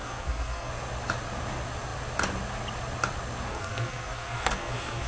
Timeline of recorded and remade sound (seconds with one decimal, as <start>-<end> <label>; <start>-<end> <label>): 0.0-0.7 remade; 0.7-3.5 recorded; 3.5-5.1 remade